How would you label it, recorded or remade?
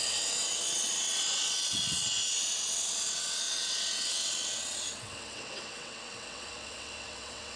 remade